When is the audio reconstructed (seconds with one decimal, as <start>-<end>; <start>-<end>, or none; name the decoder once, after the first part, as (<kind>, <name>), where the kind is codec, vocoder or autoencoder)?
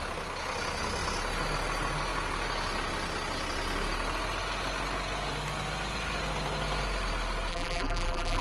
7.5-8.4 (vocoder, BigVGAN v2)